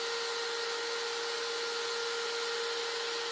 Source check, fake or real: real